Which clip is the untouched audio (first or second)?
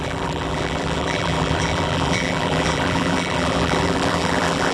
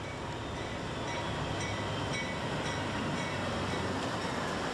second